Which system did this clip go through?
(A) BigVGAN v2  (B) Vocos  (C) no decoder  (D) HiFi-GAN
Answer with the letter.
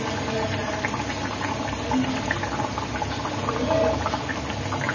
C